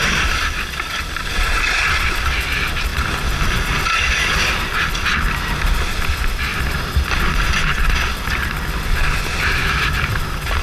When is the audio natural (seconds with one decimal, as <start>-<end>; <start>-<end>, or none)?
0.0-10.6